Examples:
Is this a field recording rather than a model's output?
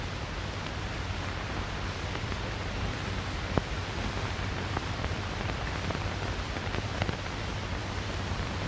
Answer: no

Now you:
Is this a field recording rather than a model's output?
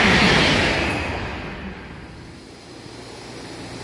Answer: yes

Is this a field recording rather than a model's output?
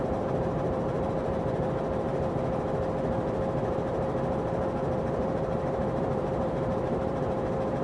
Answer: no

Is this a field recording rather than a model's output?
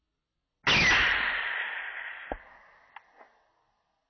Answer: yes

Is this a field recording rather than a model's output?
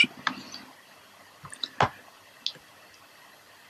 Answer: yes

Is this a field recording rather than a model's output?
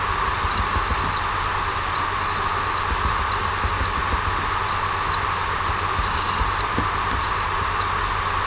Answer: yes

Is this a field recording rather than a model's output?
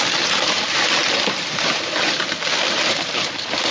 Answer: yes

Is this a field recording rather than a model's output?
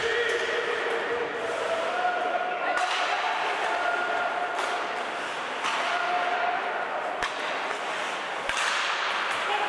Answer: yes